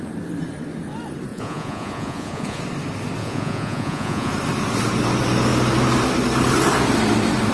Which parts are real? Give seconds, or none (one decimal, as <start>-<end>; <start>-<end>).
0.0-1.3; 2.6-3.2; 4.3-7.5